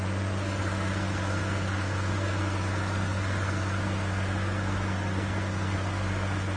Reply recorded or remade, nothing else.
remade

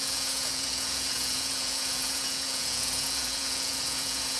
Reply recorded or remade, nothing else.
remade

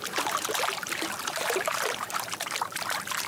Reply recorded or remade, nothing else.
remade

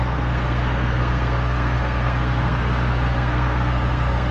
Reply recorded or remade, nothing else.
remade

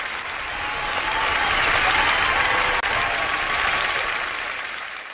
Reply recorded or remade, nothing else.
recorded